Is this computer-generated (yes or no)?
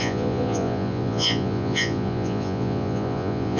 yes